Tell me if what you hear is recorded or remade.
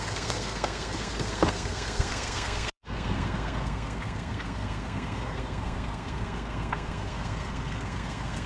remade